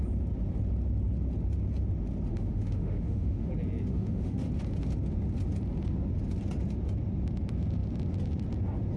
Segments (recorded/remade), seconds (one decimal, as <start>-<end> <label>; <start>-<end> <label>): 0.0-2.3 recorded; 2.3-3.5 remade; 3.5-3.9 recorded; 3.9-4.5 remade; 4.5-9.0 recorded